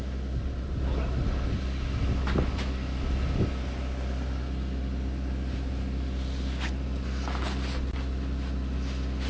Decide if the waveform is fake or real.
real